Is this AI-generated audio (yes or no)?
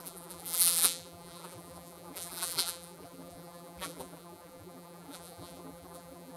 yes